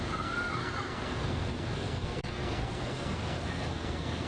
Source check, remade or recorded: remade